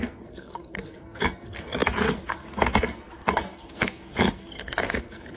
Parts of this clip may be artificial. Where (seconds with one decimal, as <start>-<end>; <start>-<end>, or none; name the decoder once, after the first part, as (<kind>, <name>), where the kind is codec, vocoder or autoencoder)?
0.0-5.4 (codec, SNAC)

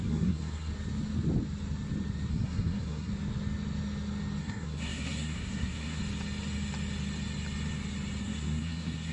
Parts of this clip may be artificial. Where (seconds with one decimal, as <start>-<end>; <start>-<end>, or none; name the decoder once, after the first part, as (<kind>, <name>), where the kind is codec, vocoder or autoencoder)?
0.0-0.7 (codec, SNAC); 2.3-3.1; 4.4-6.0; 8.2-9.1

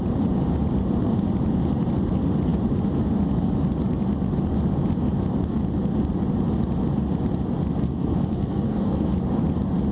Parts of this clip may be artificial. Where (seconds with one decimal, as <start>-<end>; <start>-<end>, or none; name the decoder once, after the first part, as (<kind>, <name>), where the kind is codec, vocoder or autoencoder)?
7.9-9.1 (codec, SNAC)

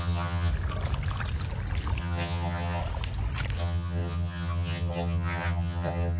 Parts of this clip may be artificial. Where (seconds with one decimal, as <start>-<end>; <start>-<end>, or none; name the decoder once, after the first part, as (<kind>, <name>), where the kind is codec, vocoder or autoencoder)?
0.0-0.5 (vocoder, HiFi-GAN); 2.0-2.8; 3.6-6.2

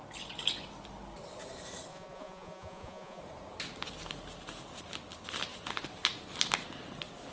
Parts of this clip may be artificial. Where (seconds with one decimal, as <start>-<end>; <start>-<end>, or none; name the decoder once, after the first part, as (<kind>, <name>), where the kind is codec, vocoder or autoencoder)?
1.9-3.2 (vocoder, Vocos)

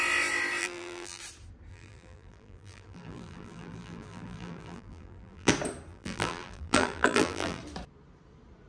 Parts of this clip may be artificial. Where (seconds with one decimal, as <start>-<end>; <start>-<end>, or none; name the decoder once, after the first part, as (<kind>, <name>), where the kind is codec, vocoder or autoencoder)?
0.6-1.2 (vocoder, BigVGAN v2); 1.7-5.5; 5.9-7.6

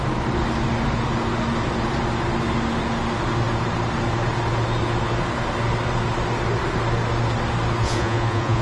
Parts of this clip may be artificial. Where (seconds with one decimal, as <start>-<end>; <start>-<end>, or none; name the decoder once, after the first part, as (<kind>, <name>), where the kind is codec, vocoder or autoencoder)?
7.8-8.6 (vocoder, Vocos)